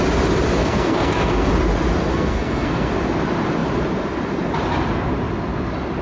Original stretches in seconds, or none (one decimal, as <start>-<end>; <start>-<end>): 0.0-0.6; 1.5-2.1; 2.9-6.0